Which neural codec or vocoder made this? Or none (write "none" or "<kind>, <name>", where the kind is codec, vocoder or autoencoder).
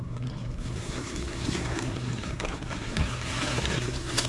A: codec, SNAC